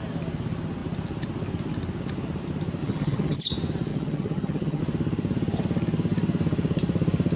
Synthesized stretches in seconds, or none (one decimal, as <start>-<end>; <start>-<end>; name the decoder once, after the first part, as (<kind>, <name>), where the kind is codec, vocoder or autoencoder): 2.8-3.4 (vocoder, HiFi-GAN); 3.9-4.8